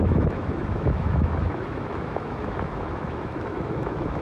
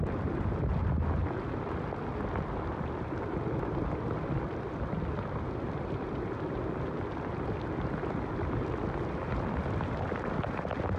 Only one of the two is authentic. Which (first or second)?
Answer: second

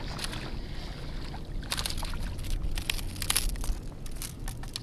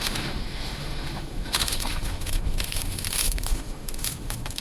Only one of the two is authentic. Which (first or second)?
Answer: first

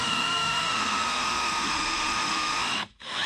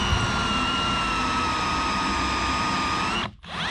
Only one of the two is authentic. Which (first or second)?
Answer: second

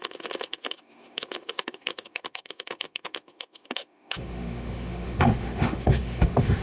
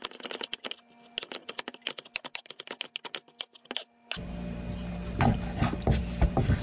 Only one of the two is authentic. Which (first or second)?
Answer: second